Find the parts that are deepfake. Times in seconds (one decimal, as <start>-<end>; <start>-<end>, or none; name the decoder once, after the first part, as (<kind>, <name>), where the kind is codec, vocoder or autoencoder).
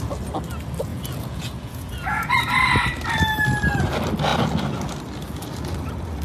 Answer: 0.9-2.3 (vocoder, Vocos)